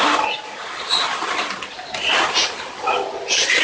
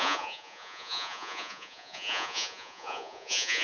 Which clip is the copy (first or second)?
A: second